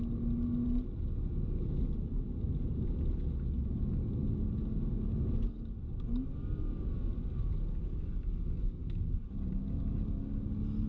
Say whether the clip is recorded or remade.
recorded